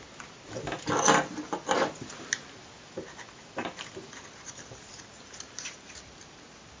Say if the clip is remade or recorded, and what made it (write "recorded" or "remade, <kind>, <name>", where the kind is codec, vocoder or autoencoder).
recorded